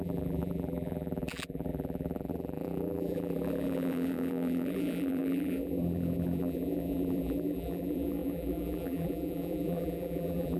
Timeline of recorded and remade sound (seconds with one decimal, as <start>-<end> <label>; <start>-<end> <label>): 0.0-10.6 remade